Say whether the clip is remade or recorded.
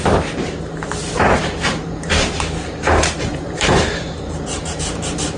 remade